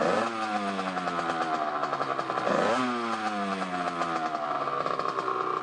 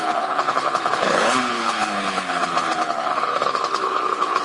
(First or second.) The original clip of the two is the first